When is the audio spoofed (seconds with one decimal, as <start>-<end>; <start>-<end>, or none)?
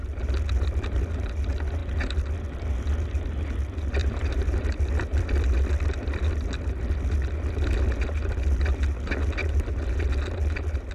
4.0-6.2; 9.4-10.1